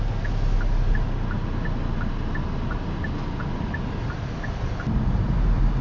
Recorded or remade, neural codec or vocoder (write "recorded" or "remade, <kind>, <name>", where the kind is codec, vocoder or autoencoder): recorded